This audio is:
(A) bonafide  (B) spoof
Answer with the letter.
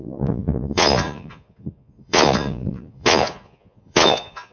B